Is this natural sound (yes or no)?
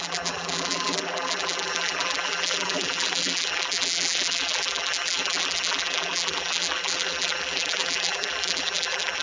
no